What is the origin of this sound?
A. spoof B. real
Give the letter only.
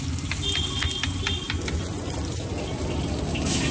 B